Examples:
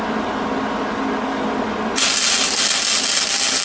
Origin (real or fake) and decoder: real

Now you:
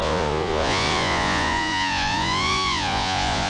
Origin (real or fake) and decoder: fake, vocoder, Vocos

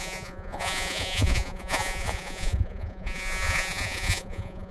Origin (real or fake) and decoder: fake, vocoder, Vocos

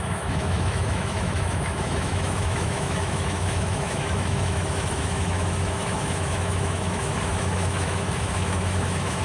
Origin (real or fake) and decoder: fake, autoencoder, DAC-VAE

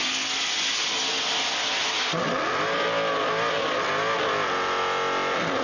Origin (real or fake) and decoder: real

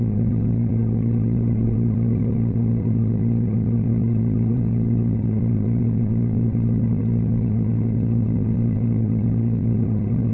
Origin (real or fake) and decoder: fake, vocoder, Vocos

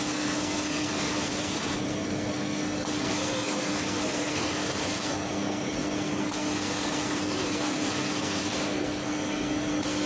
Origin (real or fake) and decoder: fake, codec, SNAC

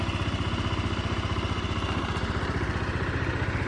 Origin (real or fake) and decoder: real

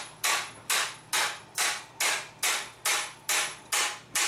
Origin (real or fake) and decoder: real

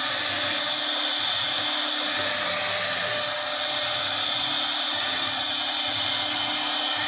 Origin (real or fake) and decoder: real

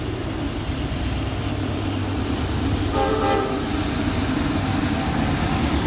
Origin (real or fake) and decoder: real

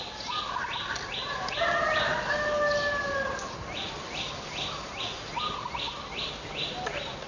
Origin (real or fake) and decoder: real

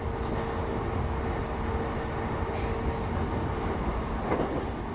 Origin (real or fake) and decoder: real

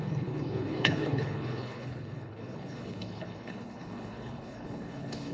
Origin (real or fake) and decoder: fake, codec, HILCodec